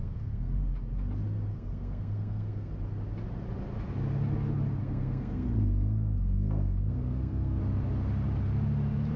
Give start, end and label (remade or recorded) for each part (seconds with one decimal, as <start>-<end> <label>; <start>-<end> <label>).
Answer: 0.0-0.7 remade; 0.7-1.5 recorded; 1.5-2.7 remade; 2.7-4.8 recorded; 4.8-7.6 remade; 7.6-9.2 recorded